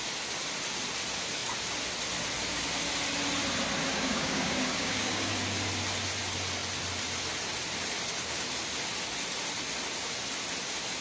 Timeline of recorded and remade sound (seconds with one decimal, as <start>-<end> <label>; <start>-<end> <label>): 0.0-3.9 recorded; 3.9-5.3 remade; 5.3-11.0 recorded